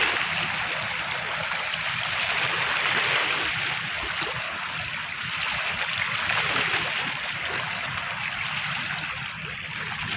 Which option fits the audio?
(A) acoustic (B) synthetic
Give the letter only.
A